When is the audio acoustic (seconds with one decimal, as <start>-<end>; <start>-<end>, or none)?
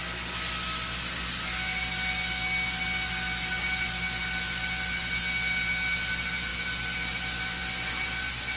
0.0-8.6